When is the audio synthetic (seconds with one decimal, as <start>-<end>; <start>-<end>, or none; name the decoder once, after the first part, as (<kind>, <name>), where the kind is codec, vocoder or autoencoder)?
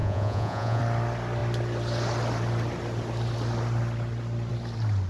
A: 0.0-0.8 (vocoder, Vocos)